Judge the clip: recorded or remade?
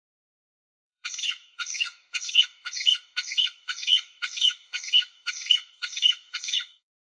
remade